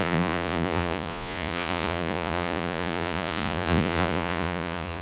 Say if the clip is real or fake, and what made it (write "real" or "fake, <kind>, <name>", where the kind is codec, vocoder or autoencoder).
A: fake, vocoder, Vocos